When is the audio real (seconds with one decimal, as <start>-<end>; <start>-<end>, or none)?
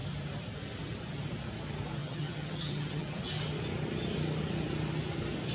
0.0-2.0; 3.2-5.5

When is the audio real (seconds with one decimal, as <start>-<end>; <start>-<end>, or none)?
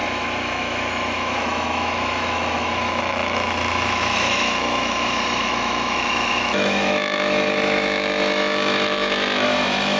none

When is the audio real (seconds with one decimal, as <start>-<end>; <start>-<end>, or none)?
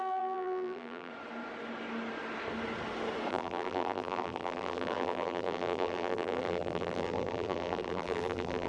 1.1-3.3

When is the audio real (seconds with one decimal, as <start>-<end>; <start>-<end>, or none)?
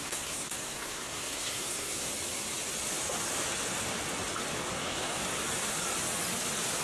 2.1-4.7; 5.2-6.8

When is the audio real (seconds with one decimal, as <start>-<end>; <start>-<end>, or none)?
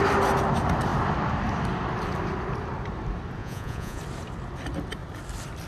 0.0-3.4; 4.0-5.7